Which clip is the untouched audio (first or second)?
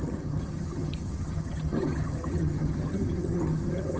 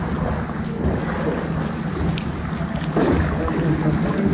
second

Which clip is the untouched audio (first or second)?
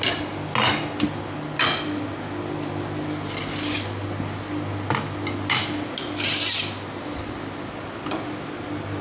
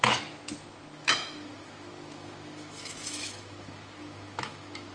first